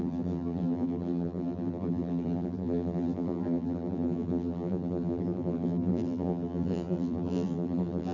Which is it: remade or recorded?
remade